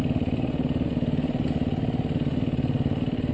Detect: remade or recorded recorded